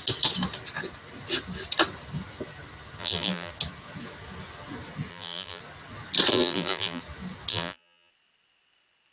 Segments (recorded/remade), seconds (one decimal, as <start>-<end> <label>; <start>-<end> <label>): 0.0-3.0 recorded; 3.0-3.5 remade; 3.5-5.1 recorded; 5.1-5.6 remade; 5.6-6.3 recorded; 6.3-7.0 remade; 7.0-7.5 recorded; 7.5-8.1 remade; 8.1-9.1 recorded